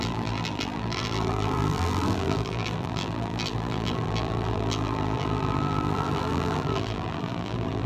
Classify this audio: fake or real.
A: fake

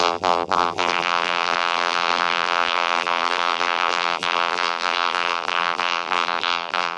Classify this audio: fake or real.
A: fake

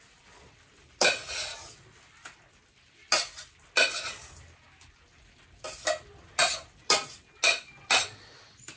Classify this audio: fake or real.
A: real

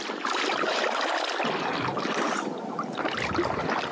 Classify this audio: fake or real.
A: real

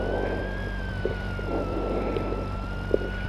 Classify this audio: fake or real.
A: real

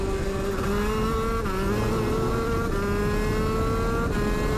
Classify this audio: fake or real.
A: real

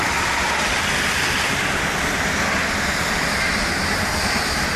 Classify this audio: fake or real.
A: fake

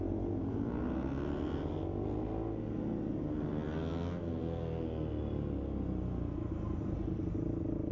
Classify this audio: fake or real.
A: real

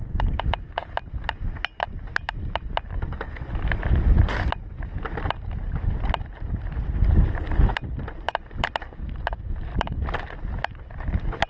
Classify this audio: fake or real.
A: fake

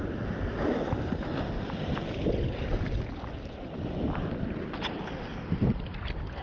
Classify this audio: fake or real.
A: fake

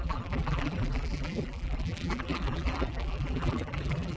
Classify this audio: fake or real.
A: fake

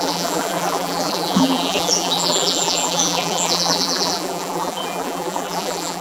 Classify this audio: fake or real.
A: fake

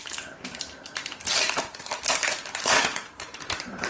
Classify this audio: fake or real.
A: fake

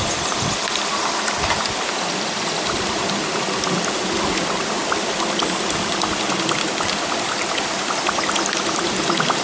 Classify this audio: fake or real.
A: fake